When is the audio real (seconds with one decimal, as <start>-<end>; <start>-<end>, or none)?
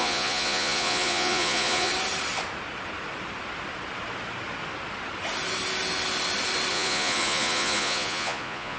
1.9-6.7